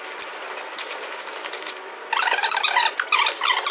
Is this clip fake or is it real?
real